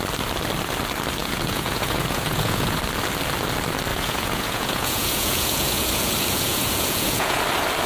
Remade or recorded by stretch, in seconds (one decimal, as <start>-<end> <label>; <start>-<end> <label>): 0.0-1.2 recorded; 1.2-2.8 remade; 2.8-3.9 recorded; 3.9-7.4 remade; 7.4-7.9 recorded

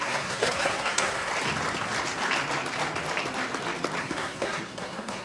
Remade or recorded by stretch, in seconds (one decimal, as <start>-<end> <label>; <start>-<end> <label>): 0.0-1.3 remade; 1.3-4.0 recorded; 4.0-5.2 remade